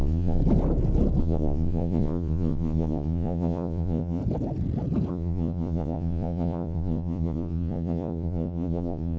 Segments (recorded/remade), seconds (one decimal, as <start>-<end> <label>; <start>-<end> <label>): 0.0-0.4 remade; 0.4-1.2 recorded; 1.2-4.2 remade; 4.2-5.1 recorded; 5.1-9.2 remade